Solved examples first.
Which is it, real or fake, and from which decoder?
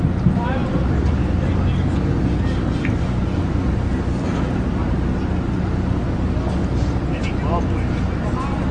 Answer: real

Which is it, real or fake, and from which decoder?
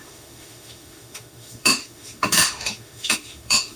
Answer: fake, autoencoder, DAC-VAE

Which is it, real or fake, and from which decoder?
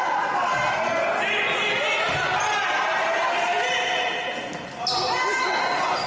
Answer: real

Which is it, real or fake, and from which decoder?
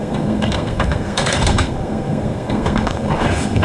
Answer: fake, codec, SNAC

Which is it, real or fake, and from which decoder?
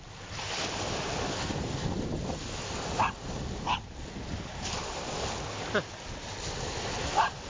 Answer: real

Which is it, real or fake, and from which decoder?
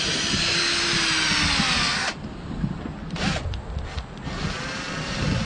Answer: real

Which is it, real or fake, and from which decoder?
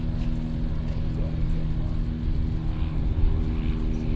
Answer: real